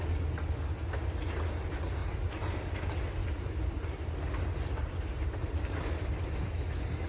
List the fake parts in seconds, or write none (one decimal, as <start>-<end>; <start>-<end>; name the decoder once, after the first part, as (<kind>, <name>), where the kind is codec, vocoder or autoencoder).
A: 2.0-2.8 (vocoder, BigVGAN v2); 3.2-6.4